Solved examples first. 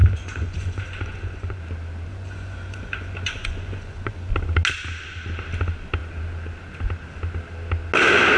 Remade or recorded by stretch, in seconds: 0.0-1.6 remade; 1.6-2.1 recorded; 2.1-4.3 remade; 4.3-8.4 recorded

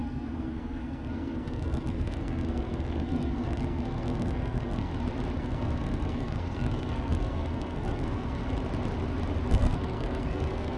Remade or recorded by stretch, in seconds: 0.0-4.9 remade; 4.9-5.4 recorded; 5.4-8.4 remade; 8.4-9.5 recorded; 9.5-10.8 remade

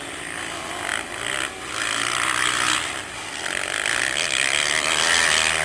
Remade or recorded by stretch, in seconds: 0.0-5.6 recorded

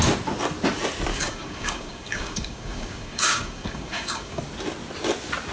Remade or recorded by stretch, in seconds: 0.0-1.1 recorded; 1.1-4.4 remade; 4.4-5.5 recorded

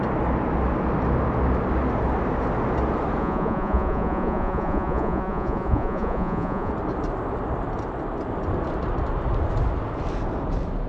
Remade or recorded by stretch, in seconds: 0.0-3.2 recorded; 3.2-6.7 remade; 6.7-10.9 recorded

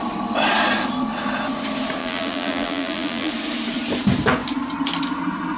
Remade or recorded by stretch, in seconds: 0.0-2.0 recorded; 2.0-3.3 remade; 3.3-5.6 recorded

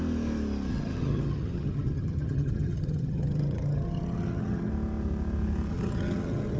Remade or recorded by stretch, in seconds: 0.0-0.7 recorded; 0.7-4.7 remade; 4.7-5.7 recorded; 5.7-6.6 remade